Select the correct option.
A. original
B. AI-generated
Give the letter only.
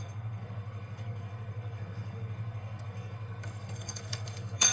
B